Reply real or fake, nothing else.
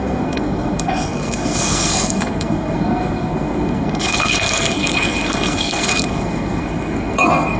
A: fake